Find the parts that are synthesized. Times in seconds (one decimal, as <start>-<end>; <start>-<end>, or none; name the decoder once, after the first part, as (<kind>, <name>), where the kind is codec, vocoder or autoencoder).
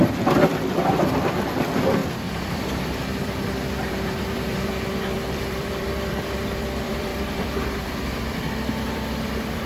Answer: 0.0-2.0 (vocoder, BigVGAN v2); 2.5-9.7